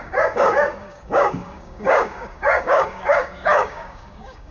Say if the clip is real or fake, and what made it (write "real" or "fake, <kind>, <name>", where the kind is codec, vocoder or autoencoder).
fake, codec, DAC